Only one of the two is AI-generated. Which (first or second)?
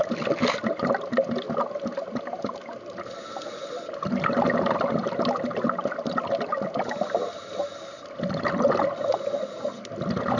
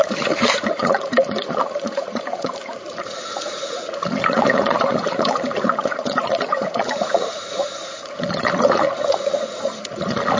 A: second